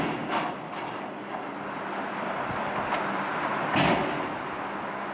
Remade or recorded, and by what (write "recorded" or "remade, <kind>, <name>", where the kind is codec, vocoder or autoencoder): recorded